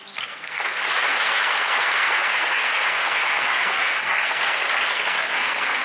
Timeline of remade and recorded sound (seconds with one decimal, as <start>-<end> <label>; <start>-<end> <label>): 0.0-5.8 remade